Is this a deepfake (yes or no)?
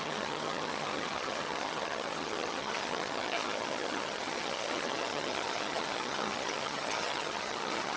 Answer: yes